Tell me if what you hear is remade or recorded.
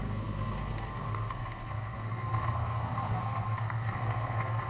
remade